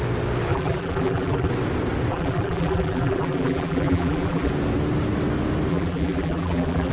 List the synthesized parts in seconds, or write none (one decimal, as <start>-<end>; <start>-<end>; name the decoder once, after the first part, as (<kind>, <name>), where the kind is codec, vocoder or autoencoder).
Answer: 0.5-1.5 (vocoder, BigVGAN v2); 2.1-4.5; 5.7-6.9